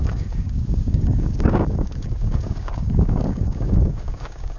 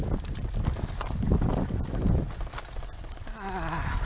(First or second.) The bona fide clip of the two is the second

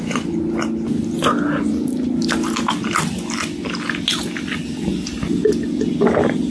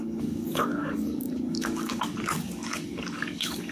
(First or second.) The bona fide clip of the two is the first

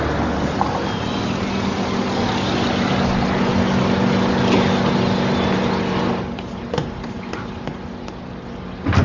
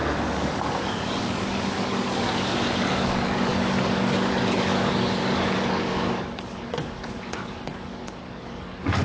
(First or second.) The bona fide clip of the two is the first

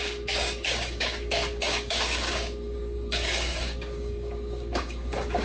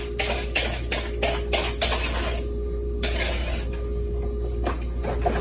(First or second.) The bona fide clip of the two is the second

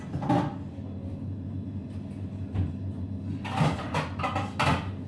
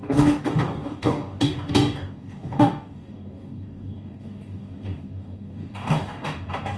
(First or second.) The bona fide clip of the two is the first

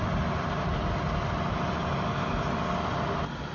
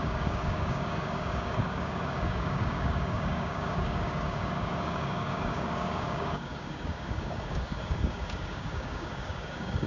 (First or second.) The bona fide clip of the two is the first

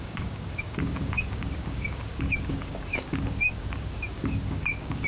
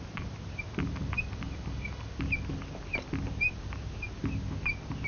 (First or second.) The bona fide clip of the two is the second